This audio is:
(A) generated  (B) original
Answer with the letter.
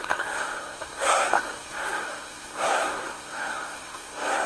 A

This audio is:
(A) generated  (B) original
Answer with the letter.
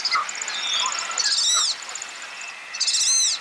B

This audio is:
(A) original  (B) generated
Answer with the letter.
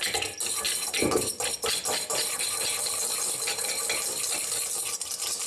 A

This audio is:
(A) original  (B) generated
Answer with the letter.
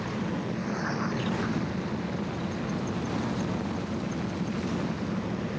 A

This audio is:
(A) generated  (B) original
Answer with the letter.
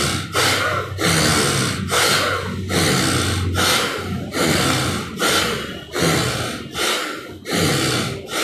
B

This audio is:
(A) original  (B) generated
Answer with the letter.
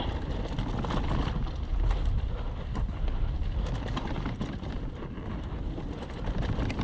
A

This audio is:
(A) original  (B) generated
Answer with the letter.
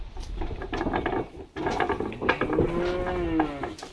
A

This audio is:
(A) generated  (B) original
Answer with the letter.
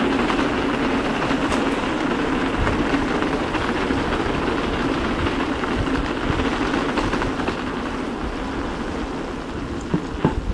B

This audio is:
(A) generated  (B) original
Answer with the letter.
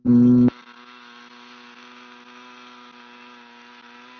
B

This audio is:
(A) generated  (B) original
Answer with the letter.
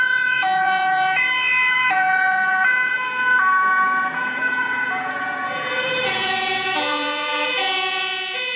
A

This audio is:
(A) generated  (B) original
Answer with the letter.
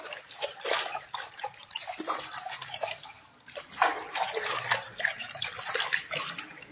B